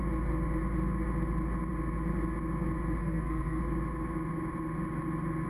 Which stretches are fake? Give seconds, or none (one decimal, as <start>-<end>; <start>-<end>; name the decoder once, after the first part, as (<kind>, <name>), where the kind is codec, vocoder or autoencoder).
3.0-3.6 (codec, SNAC)